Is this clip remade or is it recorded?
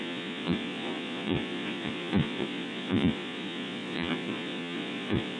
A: remade